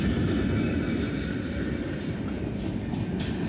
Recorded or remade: recorded